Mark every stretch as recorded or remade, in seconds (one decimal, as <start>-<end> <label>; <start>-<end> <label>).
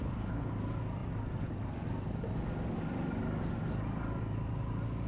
0.0-0.5 remade; 0.5-5.1 recorded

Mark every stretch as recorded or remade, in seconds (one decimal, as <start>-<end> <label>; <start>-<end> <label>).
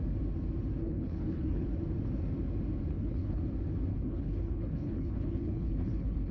0.0-0.8 recorded; 0.8-1.7 remade; 1.7-2.9 recorded; 2.9-3.4 remade; 3.4-3.9 recorded; 3.9-6.3 remade